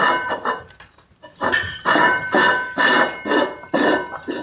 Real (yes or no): yes